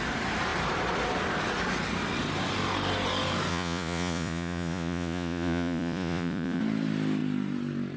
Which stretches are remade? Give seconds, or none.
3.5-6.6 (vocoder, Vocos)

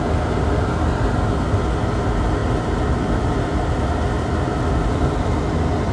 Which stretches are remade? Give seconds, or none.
none

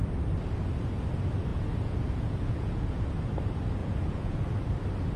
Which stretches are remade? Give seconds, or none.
1.5-2.8 (vocoder, Vocos); 3.8-4.5